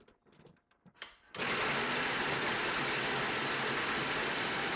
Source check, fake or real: fake